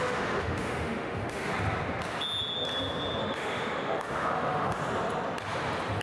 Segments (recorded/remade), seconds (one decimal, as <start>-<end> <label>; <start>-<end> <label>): 0.0-1.5 remade; 1.5-3.2 recorded; 3.2-4.8 remade; 4.8-6.0 recorded